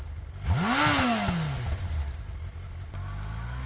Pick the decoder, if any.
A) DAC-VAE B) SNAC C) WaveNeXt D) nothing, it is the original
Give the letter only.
D